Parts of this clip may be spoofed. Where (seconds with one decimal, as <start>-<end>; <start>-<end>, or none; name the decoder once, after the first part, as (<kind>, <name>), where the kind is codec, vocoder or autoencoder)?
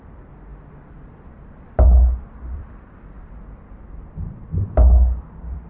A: 0.5-3.4 (vocoder, BigVGAN v2)